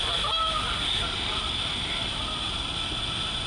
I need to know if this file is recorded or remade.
recorded